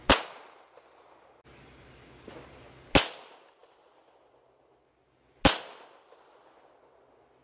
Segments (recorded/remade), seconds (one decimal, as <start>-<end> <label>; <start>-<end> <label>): 0.0-7.4 recorded